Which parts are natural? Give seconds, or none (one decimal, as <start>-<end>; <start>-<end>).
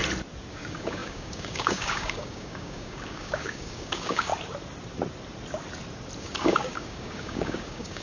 0.0-0.5; 4.3-6.2